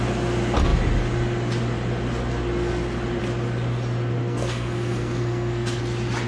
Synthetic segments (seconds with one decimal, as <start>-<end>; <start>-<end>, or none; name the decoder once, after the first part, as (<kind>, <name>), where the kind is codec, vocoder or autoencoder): 4.2-5.8 (codec, SNAC)